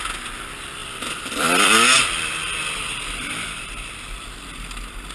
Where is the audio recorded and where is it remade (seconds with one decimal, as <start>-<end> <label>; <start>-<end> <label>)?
0.0-0.8 recorded; 0.8-3.9 remade; 3.9-5.1 recorded

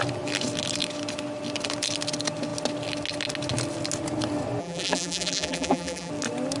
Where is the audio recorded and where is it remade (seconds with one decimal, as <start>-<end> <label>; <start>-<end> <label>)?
0.0-4.6 recorded; 4.6-6.1 remade; 6.1-6.6 recorded

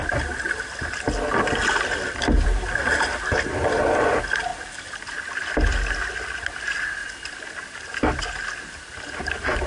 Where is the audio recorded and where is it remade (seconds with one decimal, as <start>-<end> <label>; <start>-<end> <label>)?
0.0-9.7 recorded

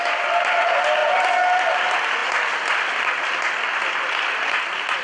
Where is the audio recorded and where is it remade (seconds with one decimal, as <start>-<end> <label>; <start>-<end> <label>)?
0.0-5.0 recorded

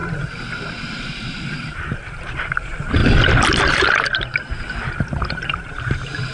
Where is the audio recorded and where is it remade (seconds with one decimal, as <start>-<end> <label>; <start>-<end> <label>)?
0.0-0.7 recorded; 0.7-3.0 remade; 3.0-3.6 recorded; 3.6-6.3 remade

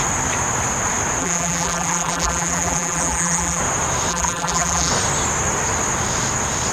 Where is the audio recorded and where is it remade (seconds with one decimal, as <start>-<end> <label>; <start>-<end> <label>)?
0.0-1.2 recorded; 1.2-3.6 remade; 3.6-4.1 recorded; 4.1-4.9 remade; 4.9-6.7 recorded

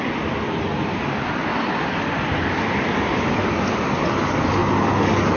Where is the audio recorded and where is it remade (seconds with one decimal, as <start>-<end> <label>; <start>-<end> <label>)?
0.0-4.6 remade; 4.6-5.4 recorded